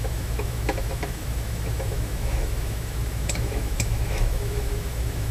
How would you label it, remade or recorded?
remade